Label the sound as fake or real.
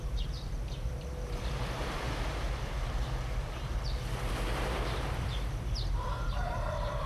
fake